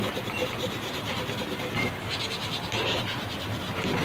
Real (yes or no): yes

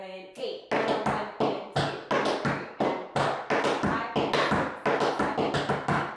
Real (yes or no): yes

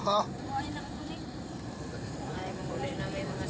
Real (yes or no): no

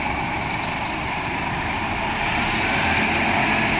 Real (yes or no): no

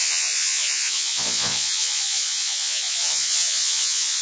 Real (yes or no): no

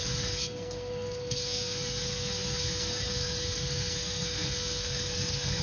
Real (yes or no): no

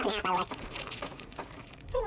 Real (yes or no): no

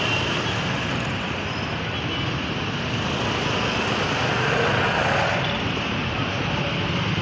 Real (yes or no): yes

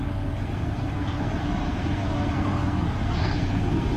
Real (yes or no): no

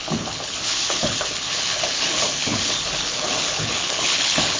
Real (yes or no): no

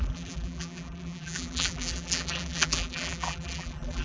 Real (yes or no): no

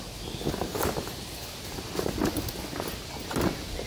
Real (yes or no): yes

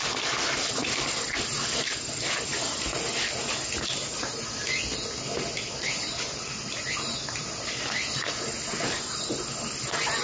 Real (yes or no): yes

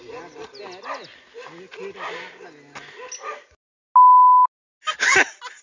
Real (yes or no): yes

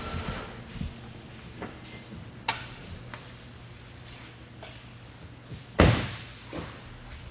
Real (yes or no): yes